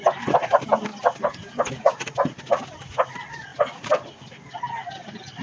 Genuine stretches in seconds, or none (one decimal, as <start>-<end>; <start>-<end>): 0.0-5.4